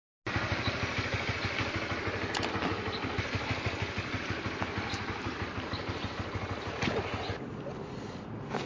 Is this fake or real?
real